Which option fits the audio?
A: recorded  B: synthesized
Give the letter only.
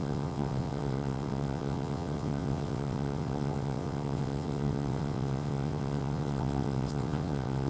B